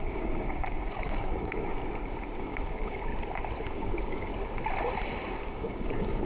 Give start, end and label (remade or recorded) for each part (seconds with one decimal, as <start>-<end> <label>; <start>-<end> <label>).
0.0-1.8 remade; 1.8-2.4 recorded; 2.4-3.1 remade; 3.1-3.6 recorded; 3.6-4.3 remade; 4.3-5.3 recorded; 5.3-6.3 remade